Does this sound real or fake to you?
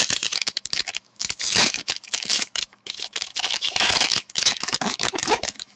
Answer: fake